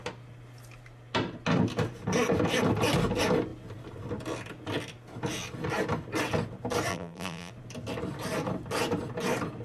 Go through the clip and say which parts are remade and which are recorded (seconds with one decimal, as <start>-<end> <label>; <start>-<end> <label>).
0.0-6.9 recorded; 6.9-7.5 remade; 7.5-9.6 recorded